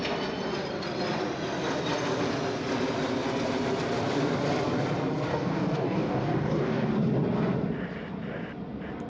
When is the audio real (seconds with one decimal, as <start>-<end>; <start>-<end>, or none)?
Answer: 0.0-5.3; 6.9-9.1

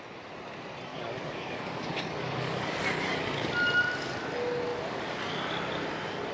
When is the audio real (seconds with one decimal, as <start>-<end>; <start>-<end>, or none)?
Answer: 0.0-0.9; 3.5-6.3

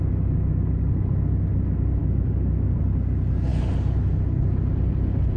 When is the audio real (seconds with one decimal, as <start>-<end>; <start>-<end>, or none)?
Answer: 0.0-2.0; 2.8-5.4

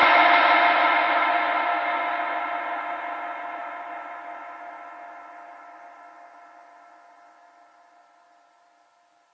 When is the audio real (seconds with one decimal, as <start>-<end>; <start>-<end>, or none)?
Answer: 0.0-1.7; 2.2-9.3

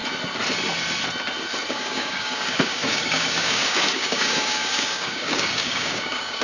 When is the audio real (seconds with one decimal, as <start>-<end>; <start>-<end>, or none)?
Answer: 0.0-1.7

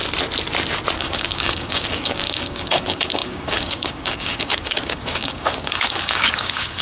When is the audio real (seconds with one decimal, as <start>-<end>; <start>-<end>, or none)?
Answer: 0.0-1.0